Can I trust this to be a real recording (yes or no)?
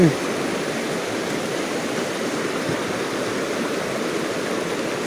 yes